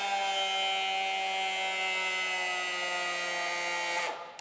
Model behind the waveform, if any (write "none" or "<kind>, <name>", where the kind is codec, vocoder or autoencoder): none